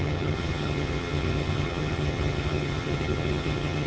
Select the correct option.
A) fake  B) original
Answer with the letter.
A